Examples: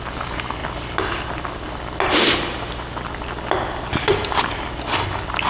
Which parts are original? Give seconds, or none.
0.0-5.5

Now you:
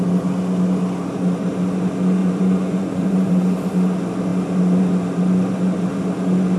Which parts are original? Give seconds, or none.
0.0-2.2; 3.3-6.6

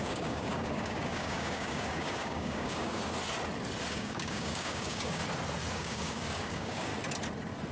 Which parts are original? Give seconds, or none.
3.0-3.9; 5.2-5.7; 6.9-7.7